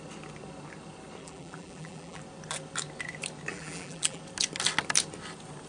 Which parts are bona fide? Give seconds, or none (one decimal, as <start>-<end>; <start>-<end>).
0.0-1.2; 2.2-3.5; 4.2-5.7